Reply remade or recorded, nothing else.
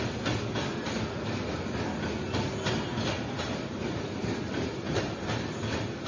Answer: recorded